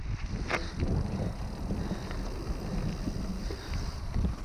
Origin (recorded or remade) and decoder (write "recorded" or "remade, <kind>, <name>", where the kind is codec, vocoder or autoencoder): recorded